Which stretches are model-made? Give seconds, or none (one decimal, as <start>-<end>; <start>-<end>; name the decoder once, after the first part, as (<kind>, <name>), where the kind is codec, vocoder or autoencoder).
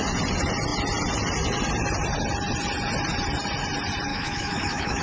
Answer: 4.1-5.0 (autoencoder, DAC-VAE)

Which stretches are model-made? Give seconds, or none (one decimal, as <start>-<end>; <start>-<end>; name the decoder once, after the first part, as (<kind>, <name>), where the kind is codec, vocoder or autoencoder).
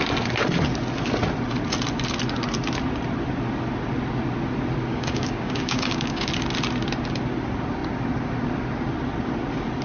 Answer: 4.9-6.3 (codec, DAC)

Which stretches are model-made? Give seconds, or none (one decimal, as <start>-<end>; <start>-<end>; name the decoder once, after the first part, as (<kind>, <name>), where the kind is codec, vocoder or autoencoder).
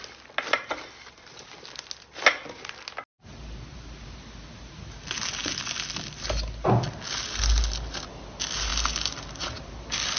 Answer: none